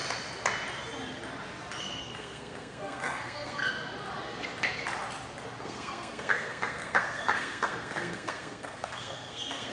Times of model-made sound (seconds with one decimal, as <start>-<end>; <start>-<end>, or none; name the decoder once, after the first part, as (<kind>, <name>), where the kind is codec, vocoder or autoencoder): 1.8-3.6 (codec, SNAC); 5.6-9.7